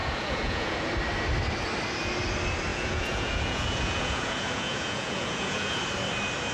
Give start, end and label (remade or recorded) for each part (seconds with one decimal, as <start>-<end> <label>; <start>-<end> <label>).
0.0-0.9 remade; 0.9-2.7 recorded; 2.7-5.8 remade; 5.8-6.5 recorded